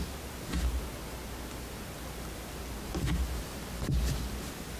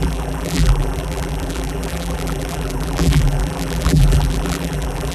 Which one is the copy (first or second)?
second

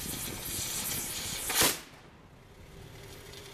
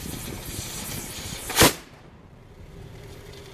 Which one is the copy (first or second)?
second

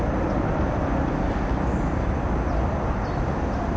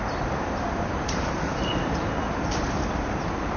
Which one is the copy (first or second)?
second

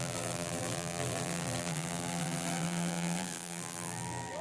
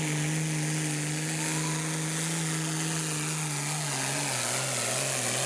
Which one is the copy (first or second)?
first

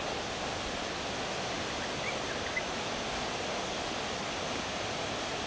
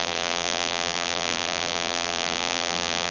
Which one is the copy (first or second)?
second